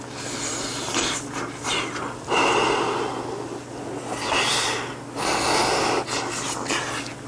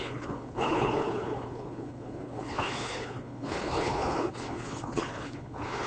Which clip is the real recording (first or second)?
first